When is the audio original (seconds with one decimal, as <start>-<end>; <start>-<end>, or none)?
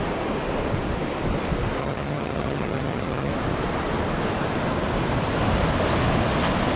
0.0-1.8; 3.3-6.8